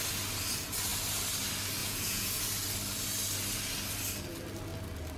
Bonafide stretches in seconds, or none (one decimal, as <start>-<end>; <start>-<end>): 0.0-1.8; 2.4-5.2